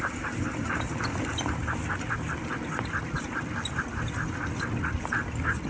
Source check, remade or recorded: recorded